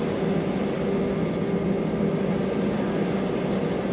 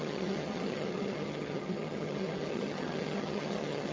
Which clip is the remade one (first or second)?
second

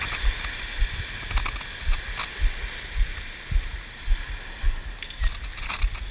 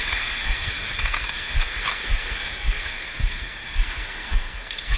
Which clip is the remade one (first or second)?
second